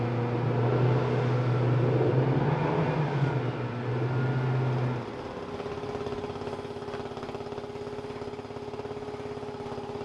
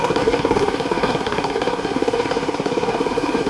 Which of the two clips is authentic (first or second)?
first